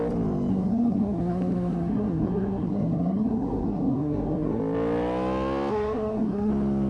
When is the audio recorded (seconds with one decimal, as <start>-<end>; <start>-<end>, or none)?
0.0-0.5; 4.6-5.7; 6.5-6.9